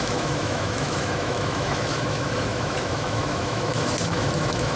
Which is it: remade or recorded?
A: remade